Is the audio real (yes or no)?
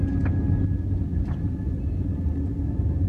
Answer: yes